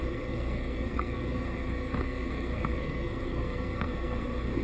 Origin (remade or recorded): remade